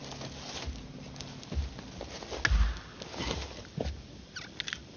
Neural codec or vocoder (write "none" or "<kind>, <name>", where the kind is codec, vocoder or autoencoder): none